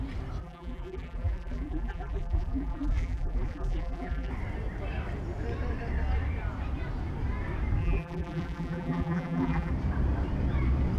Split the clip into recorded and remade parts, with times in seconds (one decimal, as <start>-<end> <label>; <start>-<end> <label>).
0.0-0.4 recorded; 0.4-4.3 remade; 4.3-7.8 recorded; 7.8-9.7 remade; 9.7-11.0 recorded